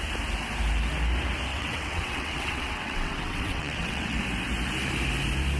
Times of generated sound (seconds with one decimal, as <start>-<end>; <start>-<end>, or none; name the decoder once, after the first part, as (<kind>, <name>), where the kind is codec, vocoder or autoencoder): 1.5-4.2 (vocoder, WaveNeXt)